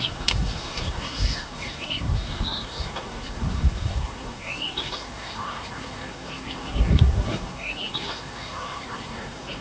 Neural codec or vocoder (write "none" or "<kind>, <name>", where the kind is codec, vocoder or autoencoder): codec, SNAC